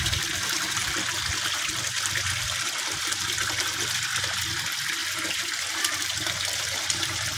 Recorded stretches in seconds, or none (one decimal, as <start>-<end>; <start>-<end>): 0.8-4.2